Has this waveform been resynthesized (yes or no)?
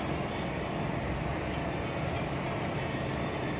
no